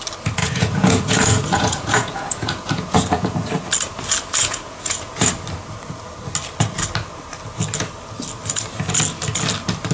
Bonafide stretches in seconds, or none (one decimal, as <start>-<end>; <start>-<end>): 0.0-0.4; 3.5-4.4; 5.3-9.9